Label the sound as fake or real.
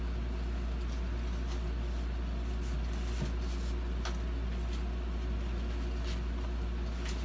real